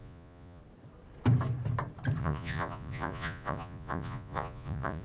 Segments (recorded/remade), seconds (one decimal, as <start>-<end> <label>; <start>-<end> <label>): 0.0-0.6 remade; 0.6-2.2 recorded; 2.2-5.0 remade